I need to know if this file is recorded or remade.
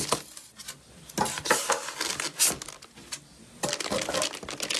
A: recorded